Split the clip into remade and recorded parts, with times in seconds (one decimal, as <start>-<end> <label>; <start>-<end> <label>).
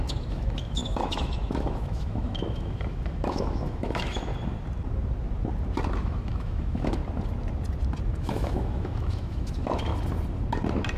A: 0.0-4.3 remade; 4.3-6.0 recorded; 6.0-7.0 remade; 7.0-8.2 recorded; 8.2-9.9 remade; 9.9-11.0 recorded